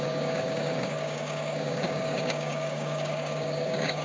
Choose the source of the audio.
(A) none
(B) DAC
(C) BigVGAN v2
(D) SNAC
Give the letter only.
B